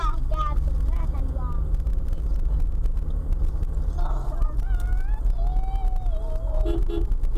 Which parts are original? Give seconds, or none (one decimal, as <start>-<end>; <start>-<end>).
0.0-0.9; 1.4-7.4